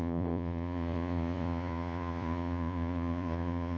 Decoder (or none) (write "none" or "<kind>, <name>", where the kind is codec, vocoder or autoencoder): vocoder, Vocos